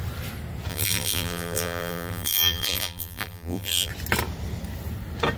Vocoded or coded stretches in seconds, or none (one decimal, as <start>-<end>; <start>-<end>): 0.7-3.9